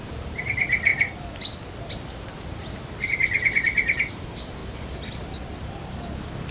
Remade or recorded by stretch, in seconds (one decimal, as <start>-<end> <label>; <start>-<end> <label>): 0.0-0.9 remade; 0.9-1.9 recorded; 1.9-4.6 remade; 4.6-6.5 recorded